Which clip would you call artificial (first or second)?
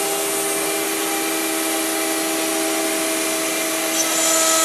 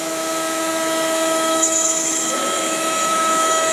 second